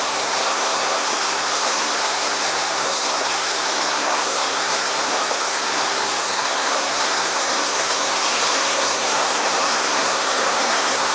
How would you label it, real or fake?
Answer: fake